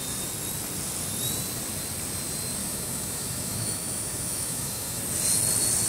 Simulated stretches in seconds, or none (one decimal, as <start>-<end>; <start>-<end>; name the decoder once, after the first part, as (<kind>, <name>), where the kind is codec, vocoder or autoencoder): 2.6-5.0 (autoencoder, DAC-VAE)